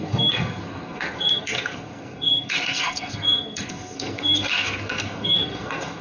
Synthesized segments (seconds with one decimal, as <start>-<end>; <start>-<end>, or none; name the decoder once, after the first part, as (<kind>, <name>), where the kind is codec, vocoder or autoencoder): 0.0-6.0 (codec, SNAC)